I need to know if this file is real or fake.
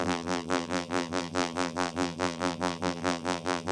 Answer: fake